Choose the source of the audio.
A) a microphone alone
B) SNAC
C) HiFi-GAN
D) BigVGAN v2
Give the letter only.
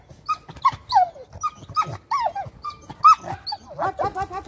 A